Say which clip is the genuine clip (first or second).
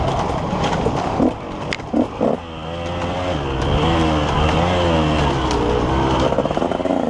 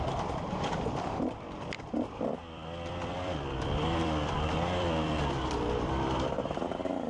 first